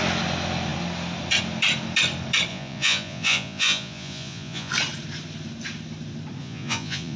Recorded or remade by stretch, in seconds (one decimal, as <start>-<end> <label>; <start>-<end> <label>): 0.0-2.5 recorded; 2.5-4.7 remade; 4.7-6.4 recorded; 6.4-7.2 remade